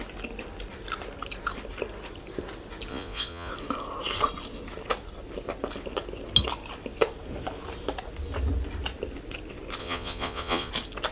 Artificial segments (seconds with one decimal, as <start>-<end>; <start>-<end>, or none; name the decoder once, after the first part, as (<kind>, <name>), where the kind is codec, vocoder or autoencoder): 2.9-3.5 (vocoder, Vocos); 9.8-10.7